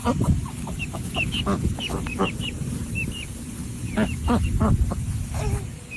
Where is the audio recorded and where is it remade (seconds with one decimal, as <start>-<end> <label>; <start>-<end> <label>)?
0.0-2.2 recorded; 2.2-3.6 remade; 3.6-6.0 recorded